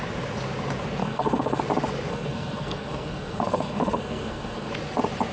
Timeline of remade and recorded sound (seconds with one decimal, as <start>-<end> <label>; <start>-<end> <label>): 0.0-1.0 recorded; 1.0-1.6 remade; 1.6-2.1 recorded; 2.1-4.7 remade; 4.7-5.3 recorded